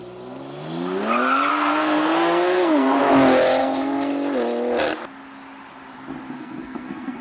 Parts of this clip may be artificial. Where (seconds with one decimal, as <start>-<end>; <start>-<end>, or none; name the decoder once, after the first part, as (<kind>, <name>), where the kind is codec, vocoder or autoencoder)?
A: 1.5-3.0 (codec, SNAC); 3.6-4.1; 6.3-7.2